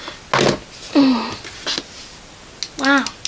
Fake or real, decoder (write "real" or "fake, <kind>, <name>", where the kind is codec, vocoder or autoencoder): real